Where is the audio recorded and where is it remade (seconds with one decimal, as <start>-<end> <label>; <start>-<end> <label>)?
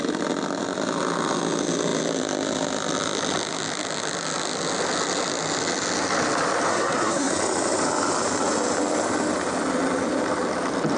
0.0-6.7 recorded; 6.7-7.3 remade; 7.3-11.0 recorded